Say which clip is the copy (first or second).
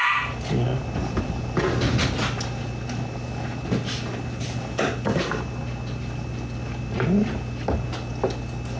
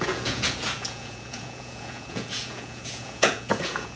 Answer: second